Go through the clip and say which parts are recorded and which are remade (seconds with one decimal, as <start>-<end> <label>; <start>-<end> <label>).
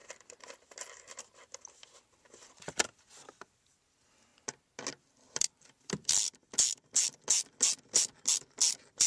0.0-9.1 recorded